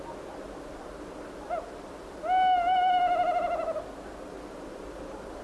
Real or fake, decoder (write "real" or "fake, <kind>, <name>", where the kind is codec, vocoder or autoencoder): real